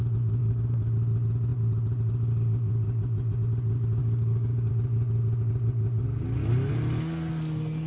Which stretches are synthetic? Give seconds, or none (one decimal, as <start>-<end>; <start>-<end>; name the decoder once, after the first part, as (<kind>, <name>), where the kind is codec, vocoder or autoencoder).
0.4-0.9 (codec, DAC); 4.0-4.7